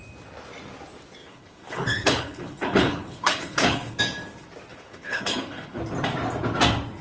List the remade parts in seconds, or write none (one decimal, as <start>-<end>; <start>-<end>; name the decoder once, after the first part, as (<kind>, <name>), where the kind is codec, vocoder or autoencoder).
1.2-4.0 (codec, HILCodec); 4.7-5.8